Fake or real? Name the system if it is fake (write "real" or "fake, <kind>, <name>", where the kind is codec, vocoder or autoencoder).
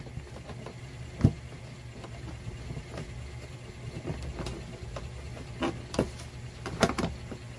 real